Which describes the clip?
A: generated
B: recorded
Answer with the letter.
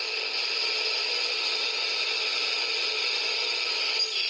B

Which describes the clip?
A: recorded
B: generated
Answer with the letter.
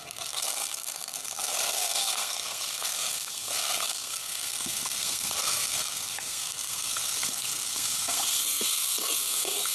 B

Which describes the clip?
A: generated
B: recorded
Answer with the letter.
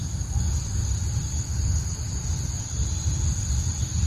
B